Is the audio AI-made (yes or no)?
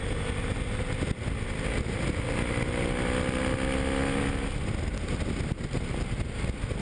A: no